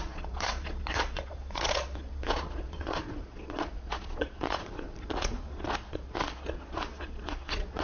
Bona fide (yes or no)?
no